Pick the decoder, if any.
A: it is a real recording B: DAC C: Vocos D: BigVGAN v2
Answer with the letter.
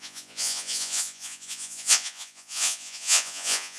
C